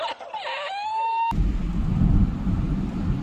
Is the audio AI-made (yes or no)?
no